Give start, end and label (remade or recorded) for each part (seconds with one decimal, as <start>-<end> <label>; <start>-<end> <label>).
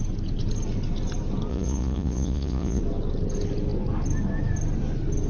0.0-1.5 recorded; 1.5-2.8 remade; 2.8-5.3 recorded